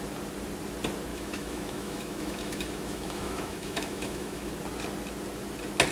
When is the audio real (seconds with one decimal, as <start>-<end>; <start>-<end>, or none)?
0.0-1.1; 4.5-5.9